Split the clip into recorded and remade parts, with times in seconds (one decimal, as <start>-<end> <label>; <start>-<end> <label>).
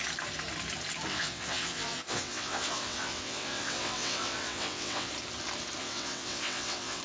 0.0-1.1 recorded; 1.1-5.1 remade; 5.1-5.8 recorded; 5.8-7.0 remade